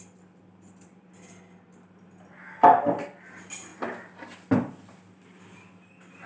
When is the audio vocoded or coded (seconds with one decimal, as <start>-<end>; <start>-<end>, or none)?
none